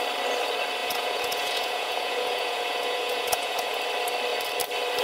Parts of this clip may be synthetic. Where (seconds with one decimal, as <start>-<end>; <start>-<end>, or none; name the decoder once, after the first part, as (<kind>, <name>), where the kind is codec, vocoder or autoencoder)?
0.8-3.8 (vocoder, Vocos)